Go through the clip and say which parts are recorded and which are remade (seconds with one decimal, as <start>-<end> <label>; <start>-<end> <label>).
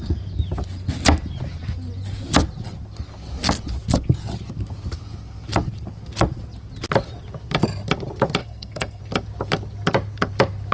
0.0-8.4 recorded; 8.4-9.0 remade; 9.0-10.7 recorded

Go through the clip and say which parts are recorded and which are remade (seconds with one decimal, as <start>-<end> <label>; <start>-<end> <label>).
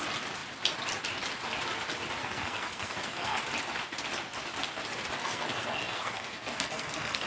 0.0-2.2 recorded; 2.2-3.4 remade; 3.4-5.2 recorded; 5.2-7.3 remade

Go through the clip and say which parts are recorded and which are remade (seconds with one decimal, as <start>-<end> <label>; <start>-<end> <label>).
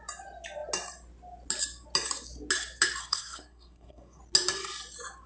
0.0-3.0 recorded; 3.0-4.2 remade; 4.2-5.3 recorded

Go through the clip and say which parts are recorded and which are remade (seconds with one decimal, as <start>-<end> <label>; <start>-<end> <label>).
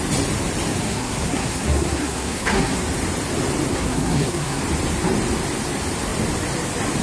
0.0-0.8 recorded; 0.8-2.8 remade; 2.8-3.7 recorded; 3.7-4.6 remade; 4.6-7.0 recorded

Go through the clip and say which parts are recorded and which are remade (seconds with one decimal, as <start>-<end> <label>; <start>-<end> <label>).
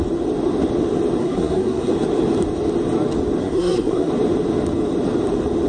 0.0-1.2 recorded; 1.2-1.9 remade; 1.9-3.4 recorded; 3.4-4.1 remade; 4.1-5.7 recorded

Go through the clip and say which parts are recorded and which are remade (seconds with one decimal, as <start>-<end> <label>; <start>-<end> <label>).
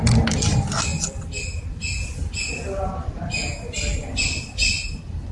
0.0-5.3 recorded